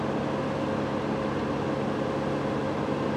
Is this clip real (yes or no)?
yes